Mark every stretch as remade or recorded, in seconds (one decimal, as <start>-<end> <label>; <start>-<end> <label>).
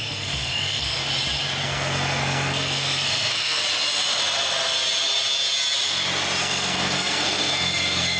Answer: 0.0-1.0 remade; 1.0-1.6 recorded; 1.6-3.6 remade; 3.6-6.4 recorded; 6.4-8.2 remade